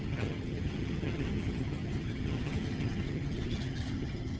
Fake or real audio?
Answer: fake